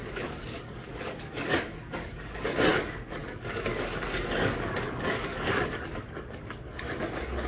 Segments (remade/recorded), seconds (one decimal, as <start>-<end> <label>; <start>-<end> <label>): 0.0-7.5 remade